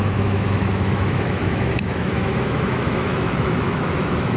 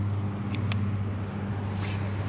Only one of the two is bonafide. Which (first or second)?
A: second